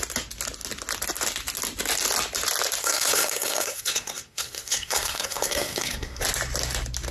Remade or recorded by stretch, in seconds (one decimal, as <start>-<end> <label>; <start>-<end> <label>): 0.0-2.8 recorded; 2.8-6.2 remade; 6.2-7.1 recorded